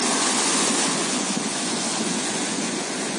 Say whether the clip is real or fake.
fake